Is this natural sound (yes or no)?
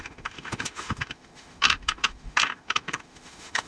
no